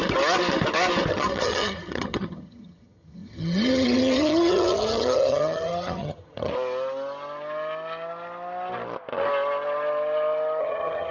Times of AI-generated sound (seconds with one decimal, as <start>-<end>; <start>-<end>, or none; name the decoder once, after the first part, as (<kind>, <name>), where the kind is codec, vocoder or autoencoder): 1.1-6.5 (vocoder, HiFi-GAN); 10.6-11.1